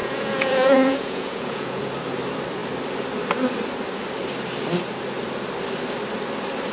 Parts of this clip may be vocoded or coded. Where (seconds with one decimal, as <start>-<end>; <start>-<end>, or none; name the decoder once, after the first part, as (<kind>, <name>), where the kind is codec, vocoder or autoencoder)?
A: 0.0-1.8 (vocoder, Vocos)